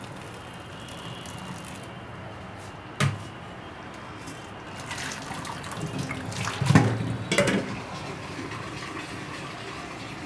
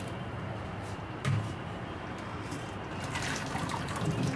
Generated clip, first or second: second